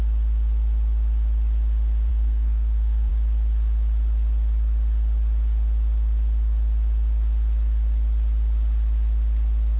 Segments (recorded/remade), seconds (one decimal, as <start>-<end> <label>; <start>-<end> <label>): 0.0-2.1 recorded; 2.1-3.1 remade; 3.1-9.8 recorded